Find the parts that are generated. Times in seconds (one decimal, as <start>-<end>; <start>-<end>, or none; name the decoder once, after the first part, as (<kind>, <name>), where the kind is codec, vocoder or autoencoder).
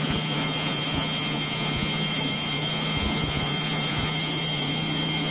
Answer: 0.0-5.3 (vocoder, Vocos)